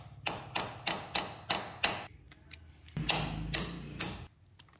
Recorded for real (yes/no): yes